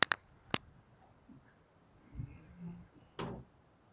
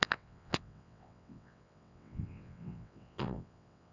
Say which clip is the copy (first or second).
second